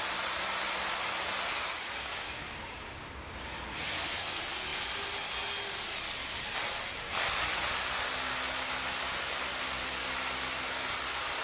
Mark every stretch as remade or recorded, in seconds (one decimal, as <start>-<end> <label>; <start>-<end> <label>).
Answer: 0.0-2.1 recorded; 2.1-3.5 remade; 3.5-11.4 recorded

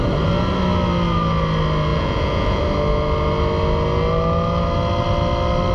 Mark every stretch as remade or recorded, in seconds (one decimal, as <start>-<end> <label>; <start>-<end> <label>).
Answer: 0.0-1.9 recorded; 1.9-2.6 remade; 2.6-5.7 recorded

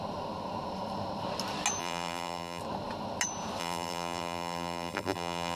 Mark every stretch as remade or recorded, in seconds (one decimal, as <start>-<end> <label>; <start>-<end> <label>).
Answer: 0.0-1.8 recorded; 1.8-2.6 remade; 2.6-3.6 recorded; 3.6-5.6 remade

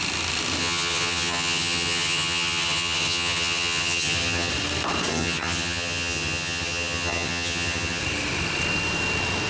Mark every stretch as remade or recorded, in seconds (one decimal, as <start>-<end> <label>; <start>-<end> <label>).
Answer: 0.0-0.6 recorded; 0.6-4.5 remade; 4.5-5.1 recorded; 5.1-8.0 remade; 8.0-9.5 recorded

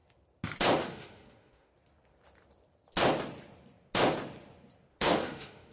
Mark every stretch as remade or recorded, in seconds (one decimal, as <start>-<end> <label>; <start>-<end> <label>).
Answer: 0.0-0.8 recorded; 0.8-1.7 remade; 1.7-4.9 recorded; 4.9-5.7 remade

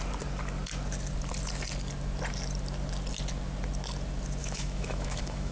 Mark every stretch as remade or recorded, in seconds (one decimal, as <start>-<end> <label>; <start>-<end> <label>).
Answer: 0.0-4.4 recorded; 4.4-5.5 remade

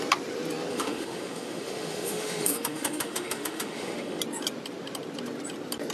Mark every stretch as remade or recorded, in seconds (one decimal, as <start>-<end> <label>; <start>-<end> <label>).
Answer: 0.0-0.7 recorded; 0.7-4.2 remade; 4.2-5.9 recorded